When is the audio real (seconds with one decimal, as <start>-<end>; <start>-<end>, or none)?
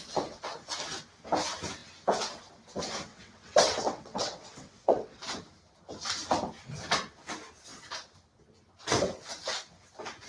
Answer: 0.0-3.1; 5.2-10.3